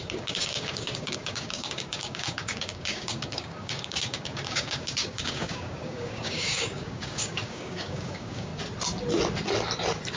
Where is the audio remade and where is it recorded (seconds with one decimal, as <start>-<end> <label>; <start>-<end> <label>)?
0.0-8.5 remade; 8.5-10.2 recorded